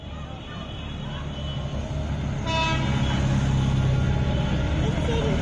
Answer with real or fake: real